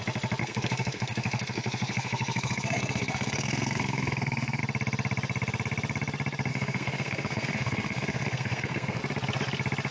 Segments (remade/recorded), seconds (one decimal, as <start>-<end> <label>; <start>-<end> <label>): 0.0-0.4 recorded; 0.4-4.6 remade; 4.6-6.5 recorded; 6.5-9.0 remade; 9.0-9.9 recorded